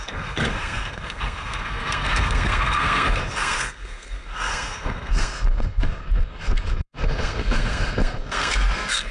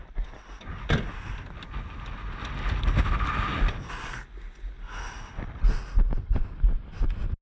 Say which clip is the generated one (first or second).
first